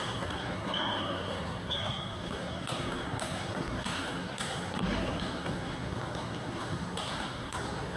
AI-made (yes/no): yes